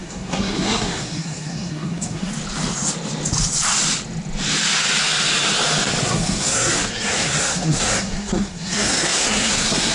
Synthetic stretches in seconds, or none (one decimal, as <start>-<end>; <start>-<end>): 0.0-2.3; 6.0-9.9